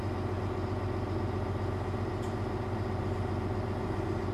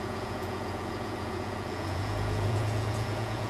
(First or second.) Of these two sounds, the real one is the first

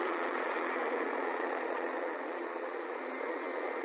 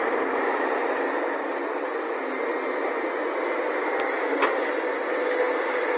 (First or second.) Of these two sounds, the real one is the second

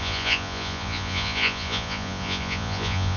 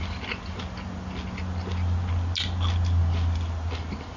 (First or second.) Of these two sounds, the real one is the second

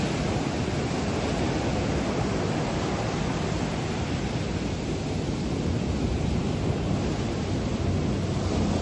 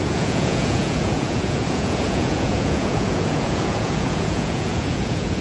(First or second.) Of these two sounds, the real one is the first